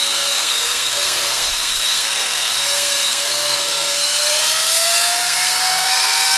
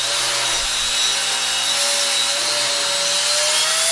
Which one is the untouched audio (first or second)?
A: second